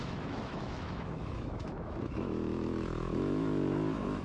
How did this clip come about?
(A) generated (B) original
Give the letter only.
A